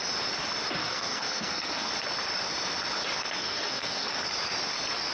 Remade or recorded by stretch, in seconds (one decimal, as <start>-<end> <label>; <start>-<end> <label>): 0.0-0.8 recorded; 0.8-1.9 remade; 1.9-3.4 recorded; 3.4-4.1 remade; 4.1-5.1 recorded